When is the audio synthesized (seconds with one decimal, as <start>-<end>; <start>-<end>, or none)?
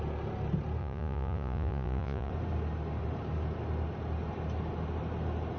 0.8-2.3